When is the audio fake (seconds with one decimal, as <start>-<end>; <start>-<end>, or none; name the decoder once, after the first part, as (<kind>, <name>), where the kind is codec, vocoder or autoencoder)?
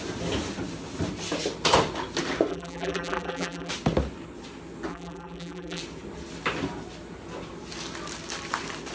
2.5-3.7 (vocoder, BigVGAN v2); 4.9-5.8